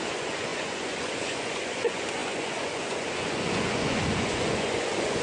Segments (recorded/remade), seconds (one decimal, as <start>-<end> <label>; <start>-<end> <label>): 0.0-5.2 remade

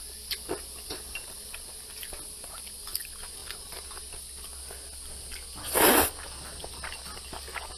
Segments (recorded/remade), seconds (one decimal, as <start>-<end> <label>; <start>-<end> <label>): 0.0-7.8 recorded

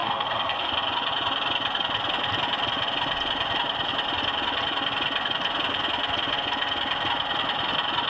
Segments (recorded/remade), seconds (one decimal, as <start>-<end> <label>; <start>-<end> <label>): 0.0-0.7 remade; 0.7-8.1 recorded

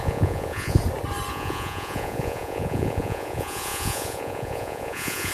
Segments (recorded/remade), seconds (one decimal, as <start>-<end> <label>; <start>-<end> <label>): 0.0-0.8 remade; 0.8-1.3 recorded; 1.3-5.3 remade

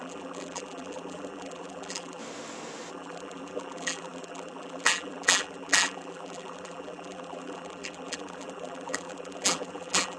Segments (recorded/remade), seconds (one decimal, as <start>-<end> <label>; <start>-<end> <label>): 0.0-2.2 remade; 2.2-2.9 recorded; 2.9-10.2 remade

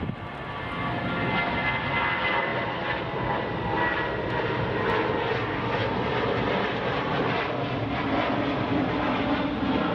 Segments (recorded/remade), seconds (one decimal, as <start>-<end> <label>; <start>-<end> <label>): 0.0-5.8 recorded; 5.8-7.2 remade; 7.2-9.9 recorded

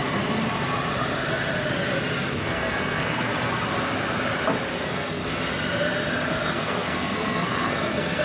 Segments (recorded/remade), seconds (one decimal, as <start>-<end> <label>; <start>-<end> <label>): 0.0-2.3 recorded; 2.3-3.3 remade; 3.3-4.7 recorded; 4.7-5.2 remade; 5.2-6.3 recorded; 6.3-8.2 remade

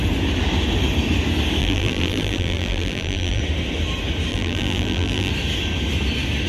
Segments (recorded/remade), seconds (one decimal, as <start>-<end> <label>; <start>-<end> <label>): 0.0-1.6 recorded; 1.6-3.4 remade; 3.4-4.3 recorded; 4.3-5.3 remade; 5.3-6.5 recorded